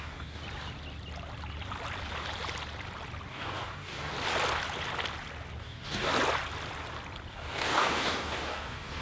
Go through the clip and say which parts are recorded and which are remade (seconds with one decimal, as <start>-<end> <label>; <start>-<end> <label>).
0.0-0.4 remade; 0.4-3.3 recorded; 3.3-4.1 remade; 4.1-5.6 recorded; 5.6-6.1 remade; 6.1-7.3 recorded; 7.3-9.0 remade